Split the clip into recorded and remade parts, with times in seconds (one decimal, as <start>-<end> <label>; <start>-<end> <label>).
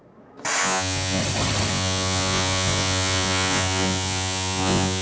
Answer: 0.0-0.6 recorded; 0.6-1.2 remade; 1.2-1.7 recorded; 1.7-5.0 remade